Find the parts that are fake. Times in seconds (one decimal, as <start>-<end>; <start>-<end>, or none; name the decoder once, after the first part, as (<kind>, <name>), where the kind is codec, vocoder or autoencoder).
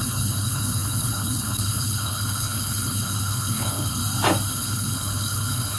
0.0-4.0 (codec, HILCodec); 4.5-5.8